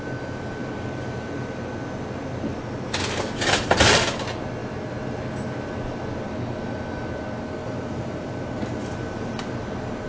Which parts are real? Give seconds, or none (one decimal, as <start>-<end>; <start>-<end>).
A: 0.0-3.0; 4.0-7.6; 9.5-10.1